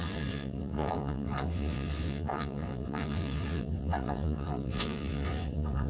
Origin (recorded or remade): remade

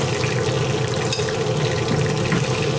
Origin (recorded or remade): recorded